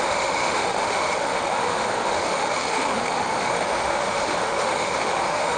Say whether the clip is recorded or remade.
remade